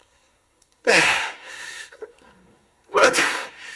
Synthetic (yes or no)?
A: yes